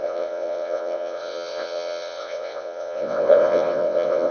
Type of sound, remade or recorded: remade